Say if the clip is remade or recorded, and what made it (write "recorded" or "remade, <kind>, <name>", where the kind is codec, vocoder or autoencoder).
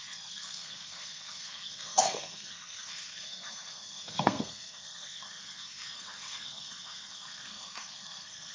remade, codec, SNAC